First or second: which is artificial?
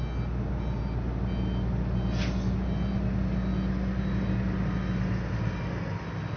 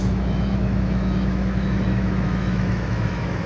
second